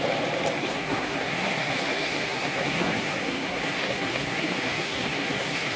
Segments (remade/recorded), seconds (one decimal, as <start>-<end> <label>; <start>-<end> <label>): 0.0-0.6 recorded; 0.6-5.8 remade